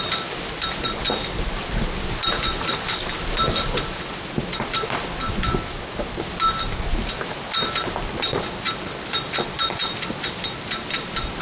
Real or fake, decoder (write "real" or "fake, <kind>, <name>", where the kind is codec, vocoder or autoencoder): real